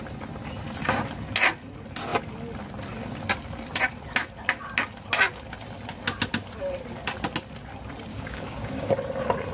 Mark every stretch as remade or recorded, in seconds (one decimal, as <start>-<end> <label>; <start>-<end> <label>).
0.0-8.1 recorded; 8.1-8.9 remade; 8.9-9.5 recorded